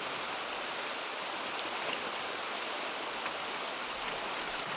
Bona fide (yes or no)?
yes